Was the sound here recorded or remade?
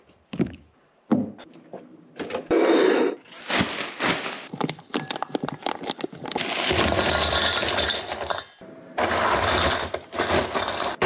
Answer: recorded